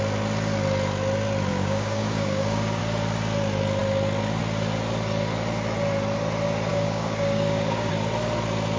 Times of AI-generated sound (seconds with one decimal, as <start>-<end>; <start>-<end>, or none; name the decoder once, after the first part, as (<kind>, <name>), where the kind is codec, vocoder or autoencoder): 1.5-2.8 (codec, DAC); 6.7-7.9